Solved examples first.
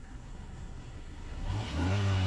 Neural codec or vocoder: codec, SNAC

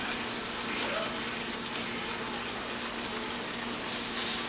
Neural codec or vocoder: none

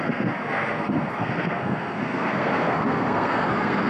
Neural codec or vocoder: codec, SNAC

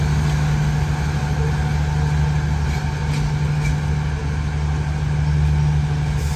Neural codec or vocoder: none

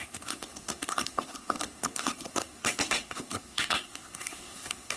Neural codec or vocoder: codec, SNAC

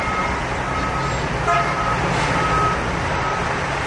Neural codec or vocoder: none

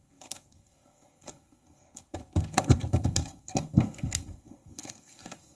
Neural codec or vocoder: codec, SNAC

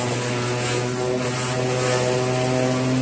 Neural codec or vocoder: none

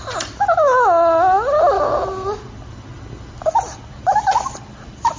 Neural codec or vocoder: none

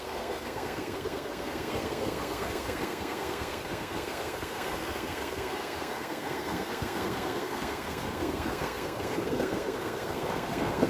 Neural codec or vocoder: codec, SNAC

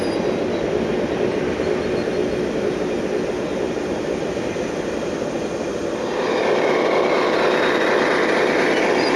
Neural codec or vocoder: none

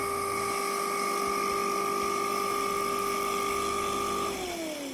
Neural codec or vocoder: none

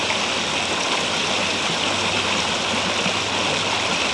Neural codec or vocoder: none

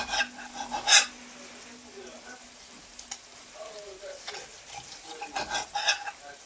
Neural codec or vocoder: none